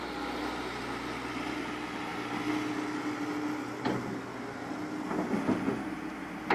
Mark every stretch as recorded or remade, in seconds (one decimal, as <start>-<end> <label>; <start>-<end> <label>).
0.0-6.5 recorded